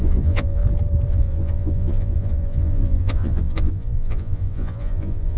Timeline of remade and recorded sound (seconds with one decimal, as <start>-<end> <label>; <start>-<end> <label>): 0.0-0.6 remade; 0.6-1.1 recorded; 1.1-5.4 remade